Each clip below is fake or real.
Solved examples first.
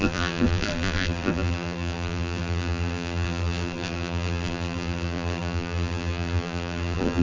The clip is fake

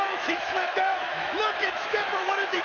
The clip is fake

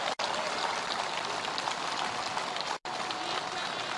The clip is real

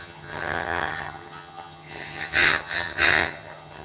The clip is fake